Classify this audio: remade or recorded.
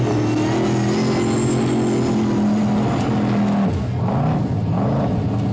recorded